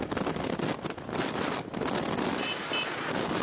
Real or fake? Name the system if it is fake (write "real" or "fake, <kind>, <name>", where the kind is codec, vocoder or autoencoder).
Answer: real